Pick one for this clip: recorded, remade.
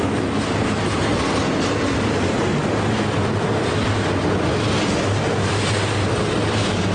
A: recorded